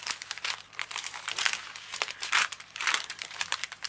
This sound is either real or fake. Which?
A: fake